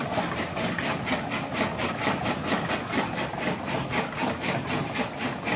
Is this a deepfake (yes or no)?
no